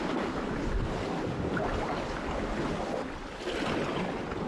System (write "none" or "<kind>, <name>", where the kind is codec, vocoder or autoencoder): none